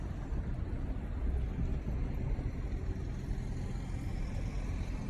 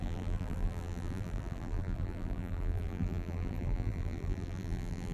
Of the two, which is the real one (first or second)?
first